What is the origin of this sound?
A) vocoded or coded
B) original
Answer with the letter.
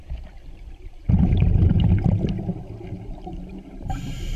B